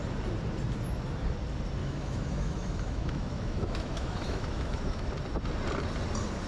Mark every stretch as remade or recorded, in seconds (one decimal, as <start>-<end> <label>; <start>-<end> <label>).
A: 0.0-1.8 recorded; 1.8-5.1 remade; 5.1-6.5 recorded